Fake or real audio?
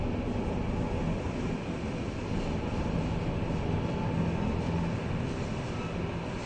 real